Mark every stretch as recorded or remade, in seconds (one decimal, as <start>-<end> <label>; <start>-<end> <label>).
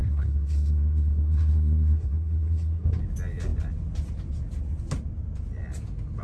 0.0-3.0 remade; 3.0-6.2 recorded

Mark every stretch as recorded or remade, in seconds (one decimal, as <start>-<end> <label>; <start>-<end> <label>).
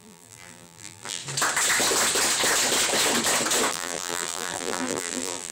0.0-1.2 remade; 1.2-3.7 recorded; 3.7-5.5 remade